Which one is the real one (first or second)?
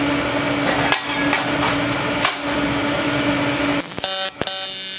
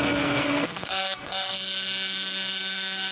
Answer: first